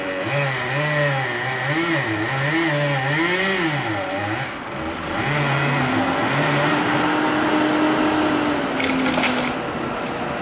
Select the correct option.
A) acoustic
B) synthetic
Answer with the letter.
A